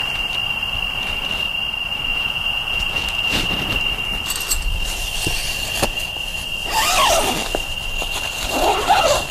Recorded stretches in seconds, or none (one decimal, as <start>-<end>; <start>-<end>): 0.0-2.1; 3.4-9.3